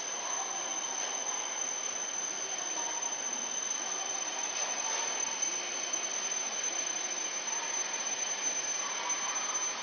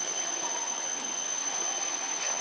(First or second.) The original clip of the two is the first